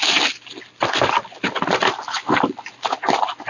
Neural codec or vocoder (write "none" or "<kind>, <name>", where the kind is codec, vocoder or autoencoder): none